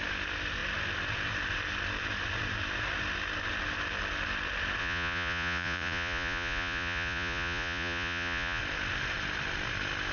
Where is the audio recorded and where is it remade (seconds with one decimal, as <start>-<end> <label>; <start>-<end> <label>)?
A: 0.0-4.8 recorded; 4.8-8.6 remade; 8.6-10.1 recorded